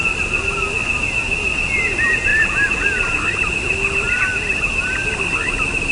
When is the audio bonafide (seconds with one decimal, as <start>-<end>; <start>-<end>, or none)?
0.0-5.9